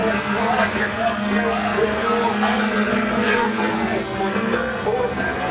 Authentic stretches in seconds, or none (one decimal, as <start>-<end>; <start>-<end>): none